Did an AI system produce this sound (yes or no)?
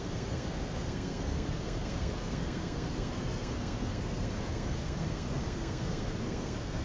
yes